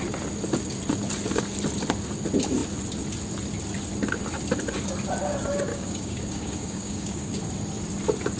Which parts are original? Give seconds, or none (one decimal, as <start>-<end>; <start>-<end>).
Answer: 0.0-5.7; 7.4-8.4